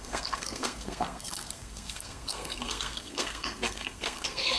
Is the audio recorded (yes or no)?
no